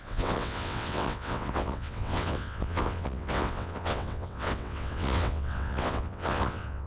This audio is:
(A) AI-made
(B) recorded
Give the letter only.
A